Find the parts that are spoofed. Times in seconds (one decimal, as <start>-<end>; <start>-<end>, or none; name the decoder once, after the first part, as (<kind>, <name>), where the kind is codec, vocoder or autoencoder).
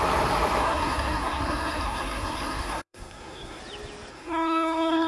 0.6-3.6 (codec, SNAC); 4.1-5.1